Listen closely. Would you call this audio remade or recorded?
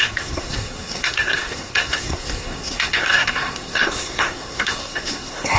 remade